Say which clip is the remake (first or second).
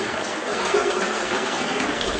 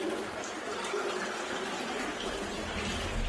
first